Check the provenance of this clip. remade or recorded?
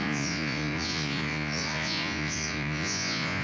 remade